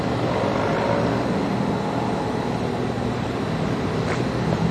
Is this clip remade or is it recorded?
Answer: recorded